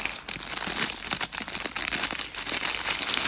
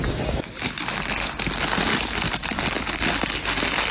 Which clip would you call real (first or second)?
second